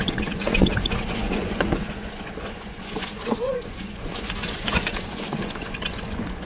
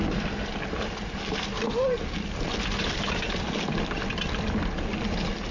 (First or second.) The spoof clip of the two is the first